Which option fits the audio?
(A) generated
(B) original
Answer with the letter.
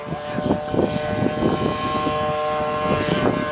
B